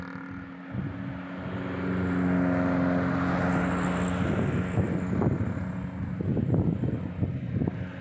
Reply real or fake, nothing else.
real